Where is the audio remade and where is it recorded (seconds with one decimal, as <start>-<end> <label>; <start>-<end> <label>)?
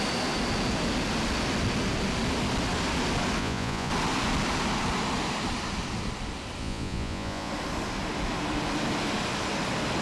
0.0-3.4 recorded; 3.4-3.9 remade; 3.9-6.6 recorded; 6.6-7.5 remade; 7.5-10.0 recorded